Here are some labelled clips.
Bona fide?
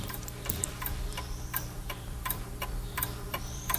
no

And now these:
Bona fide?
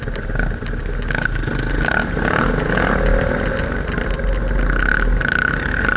yes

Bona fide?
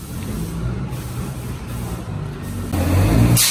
yes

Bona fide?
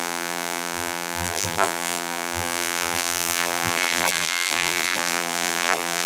no